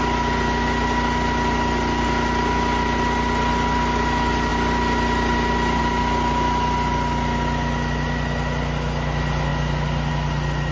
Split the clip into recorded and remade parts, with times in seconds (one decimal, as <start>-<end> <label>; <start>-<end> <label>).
0.0-10.7 recorded